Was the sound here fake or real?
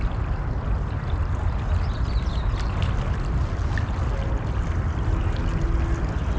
real